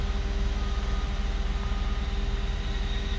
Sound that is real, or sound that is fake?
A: real